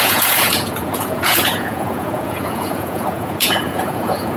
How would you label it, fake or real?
fake